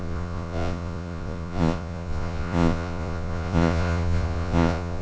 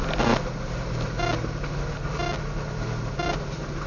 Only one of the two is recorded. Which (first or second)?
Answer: second